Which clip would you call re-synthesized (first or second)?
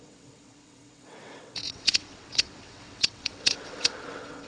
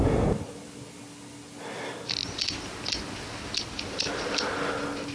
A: first